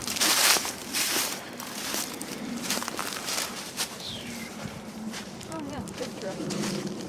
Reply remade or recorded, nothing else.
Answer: remade